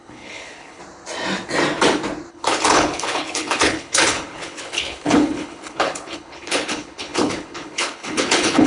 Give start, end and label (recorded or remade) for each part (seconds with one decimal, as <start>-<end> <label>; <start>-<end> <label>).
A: 0.0-0.8 remade; 0.8-2.3 recorded; 2.3-8.7 remade